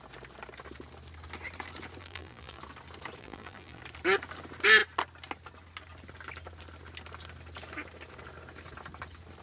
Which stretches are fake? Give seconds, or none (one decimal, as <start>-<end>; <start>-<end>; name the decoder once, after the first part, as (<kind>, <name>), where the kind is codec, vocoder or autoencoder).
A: 2.0-2.6 (vocoder, BigVGAN v2); 3.2-3.8